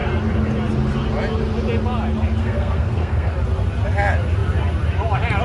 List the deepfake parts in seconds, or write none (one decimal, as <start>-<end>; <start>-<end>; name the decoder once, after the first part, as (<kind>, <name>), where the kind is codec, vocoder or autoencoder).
2.4-3.3 (codec, SNAC)